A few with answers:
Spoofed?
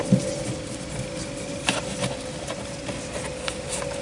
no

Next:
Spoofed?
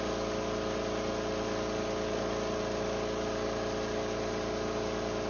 no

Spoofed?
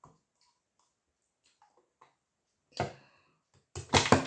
no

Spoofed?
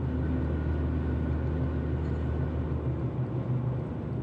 no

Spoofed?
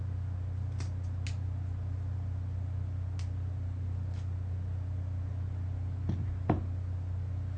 no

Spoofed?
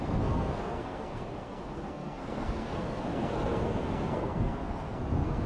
yes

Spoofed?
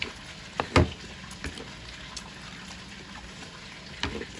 no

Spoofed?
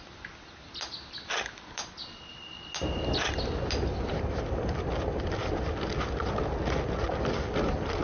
no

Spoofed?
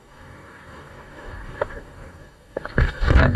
yes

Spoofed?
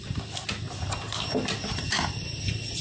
no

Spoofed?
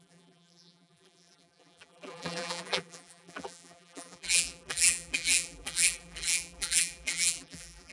yes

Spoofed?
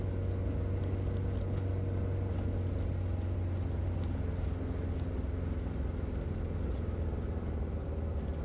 no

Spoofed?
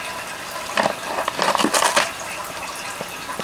no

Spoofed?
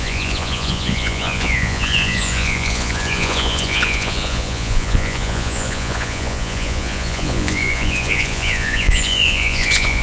yes